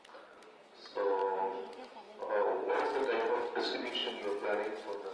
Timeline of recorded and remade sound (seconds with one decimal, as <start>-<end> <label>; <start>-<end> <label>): 0.0-5.1 recorded